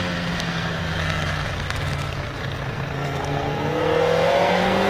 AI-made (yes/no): yes